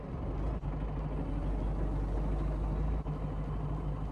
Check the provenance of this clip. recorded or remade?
recorded